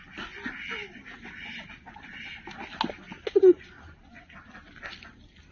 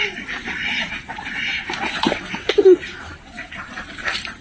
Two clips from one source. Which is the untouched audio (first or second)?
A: first